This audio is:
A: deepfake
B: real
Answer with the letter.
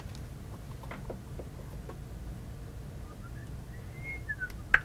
B